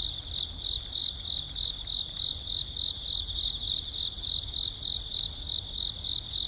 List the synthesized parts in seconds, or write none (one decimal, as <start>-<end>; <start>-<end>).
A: none